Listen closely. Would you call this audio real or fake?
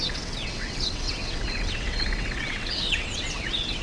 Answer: fake